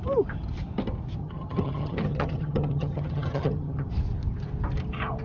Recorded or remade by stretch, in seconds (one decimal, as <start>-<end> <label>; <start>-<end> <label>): 0.0-1.2 recorded; 1.2-3.9 remade; 3.9-5.2 recorded